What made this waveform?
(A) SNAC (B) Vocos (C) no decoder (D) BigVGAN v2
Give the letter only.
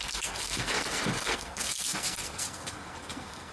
A